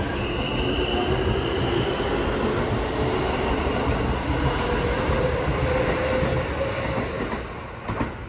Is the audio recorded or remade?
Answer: recorded